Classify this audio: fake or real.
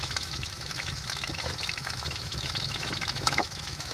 fake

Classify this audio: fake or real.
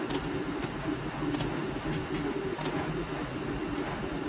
real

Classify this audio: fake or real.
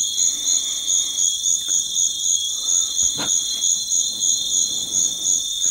real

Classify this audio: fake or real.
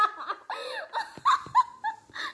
real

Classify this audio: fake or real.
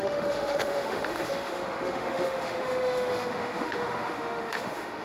fake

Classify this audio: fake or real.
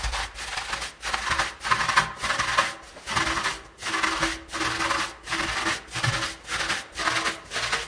real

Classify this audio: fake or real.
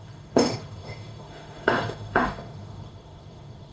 fake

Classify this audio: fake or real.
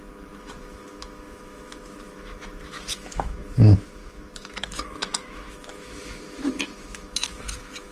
fake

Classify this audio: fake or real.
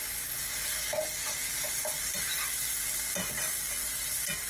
real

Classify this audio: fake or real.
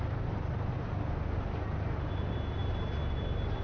real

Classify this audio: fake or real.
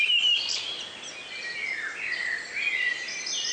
real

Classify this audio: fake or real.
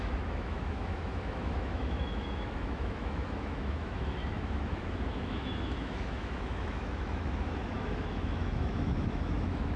fake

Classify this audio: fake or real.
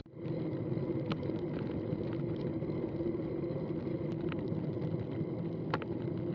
real